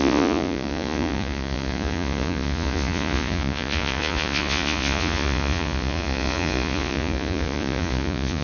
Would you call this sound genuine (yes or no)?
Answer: no